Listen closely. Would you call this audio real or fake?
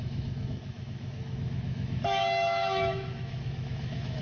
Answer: fake